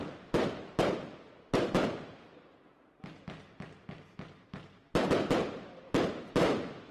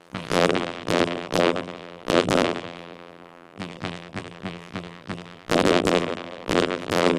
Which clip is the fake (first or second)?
second